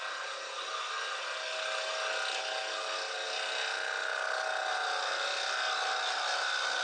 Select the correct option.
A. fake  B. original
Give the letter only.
B